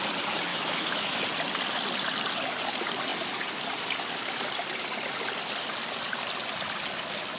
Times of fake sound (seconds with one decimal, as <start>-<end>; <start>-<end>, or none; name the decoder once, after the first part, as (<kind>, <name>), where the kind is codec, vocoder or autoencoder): 0.5-1.2 (autoencoder, DAC-VAE)